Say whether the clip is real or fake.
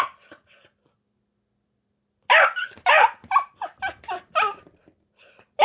real